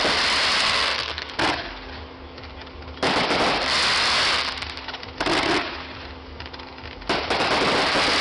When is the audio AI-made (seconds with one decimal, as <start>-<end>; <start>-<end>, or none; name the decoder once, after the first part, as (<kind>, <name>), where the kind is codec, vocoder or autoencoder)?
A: 0.6-1.3 (codec, SNAC)